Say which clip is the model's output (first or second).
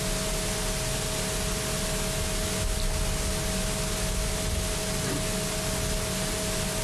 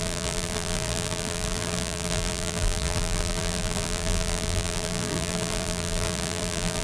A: second